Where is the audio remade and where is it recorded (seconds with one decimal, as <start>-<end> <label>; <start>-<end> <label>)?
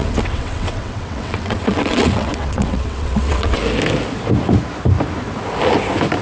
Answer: 0.0-3.6 remade; 3.6-6.2 recorded